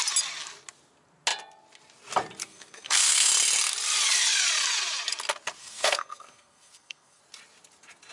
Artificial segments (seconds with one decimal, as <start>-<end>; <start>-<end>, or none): 2.4-3.3; 5.6-7.2